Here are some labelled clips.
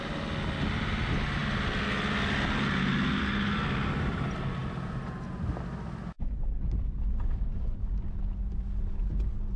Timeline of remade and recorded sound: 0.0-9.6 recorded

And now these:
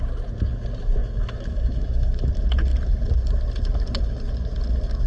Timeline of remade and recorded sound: 0.0-1.0 recorded; 1.0-2.3 remade; 2.3-5.1 recorded

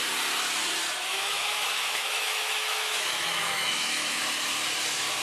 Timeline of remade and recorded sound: 0.0-1.1 recorded; 1.1-4.2 remade; 4.2-5.2 recorded

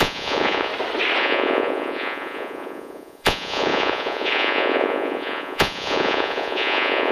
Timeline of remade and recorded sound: 0.0-0.7 remade; 0.7-1.2 recorded; 1.2-7.1 remade

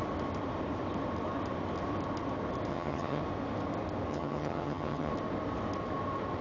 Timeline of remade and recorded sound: 0.0-2.7 recorded; 2.7-3.2 remade; 3.2-4.1 recorded; 4.1-5.1 remade; 5.1-6.4 recorded

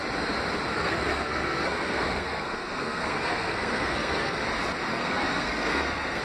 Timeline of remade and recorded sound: 0.0-0.7 recorded; 0.7-4.4 remade; 4.4-4.9 recorded; 4.9-6.2 remade

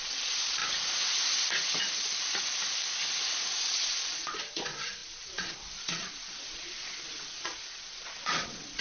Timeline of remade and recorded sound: 0.0-0.6 remade; 0.6-3.6 recorded; 3.6-8.8 remade

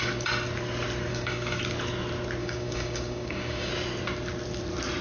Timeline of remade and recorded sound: 0.0-1.1 recorded; 1.1-1.6 remade; 1.6-2.4 recorded; 2.4-3.7 remade; 3.7-5.0 recorded